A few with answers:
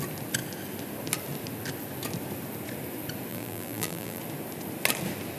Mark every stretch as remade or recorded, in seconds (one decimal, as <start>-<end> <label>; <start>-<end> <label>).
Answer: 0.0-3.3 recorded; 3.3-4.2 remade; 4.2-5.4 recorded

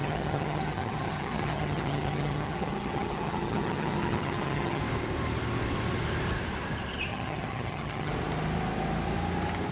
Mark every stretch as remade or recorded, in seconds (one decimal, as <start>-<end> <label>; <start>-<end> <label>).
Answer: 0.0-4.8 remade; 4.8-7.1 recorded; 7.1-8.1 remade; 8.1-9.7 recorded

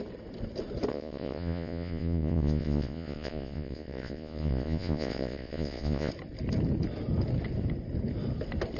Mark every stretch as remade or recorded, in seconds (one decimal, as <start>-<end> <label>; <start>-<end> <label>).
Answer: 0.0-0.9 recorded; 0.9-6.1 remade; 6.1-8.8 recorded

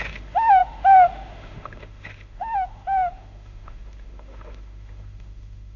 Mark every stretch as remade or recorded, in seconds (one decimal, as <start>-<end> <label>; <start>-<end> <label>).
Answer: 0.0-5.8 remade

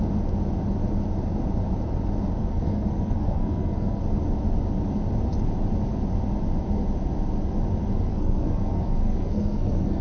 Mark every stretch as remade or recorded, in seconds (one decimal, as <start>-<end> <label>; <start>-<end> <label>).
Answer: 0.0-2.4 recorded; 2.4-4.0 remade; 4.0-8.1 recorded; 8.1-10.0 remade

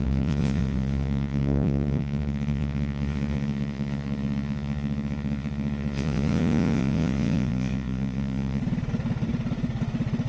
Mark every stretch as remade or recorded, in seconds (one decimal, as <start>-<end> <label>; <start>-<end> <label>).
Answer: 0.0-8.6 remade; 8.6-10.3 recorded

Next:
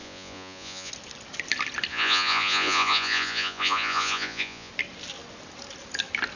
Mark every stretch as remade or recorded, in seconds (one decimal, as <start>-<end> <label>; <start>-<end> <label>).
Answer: 0.0-0.9 remade; 0.9-1.9 recorded; 1.9-4.7 remade; 4.7-6.4 recorded